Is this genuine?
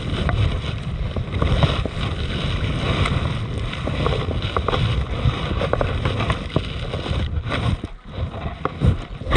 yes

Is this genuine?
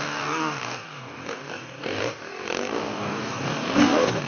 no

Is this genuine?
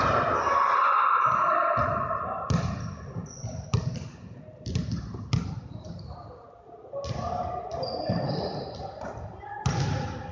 yes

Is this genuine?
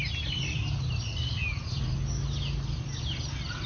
yes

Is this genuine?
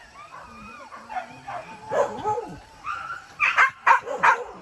no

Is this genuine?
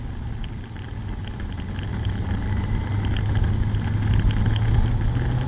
yes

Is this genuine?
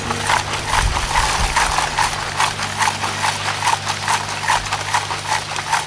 yes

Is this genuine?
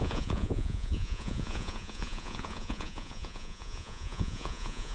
no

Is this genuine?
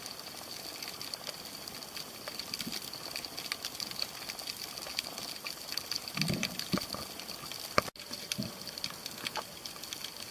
yes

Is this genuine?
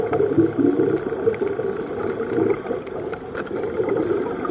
yes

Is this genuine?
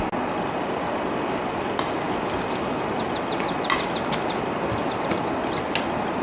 yes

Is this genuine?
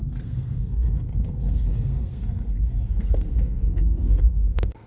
no